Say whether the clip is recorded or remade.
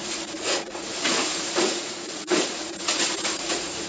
remade